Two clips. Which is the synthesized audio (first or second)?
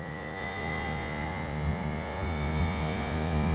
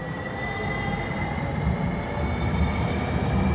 first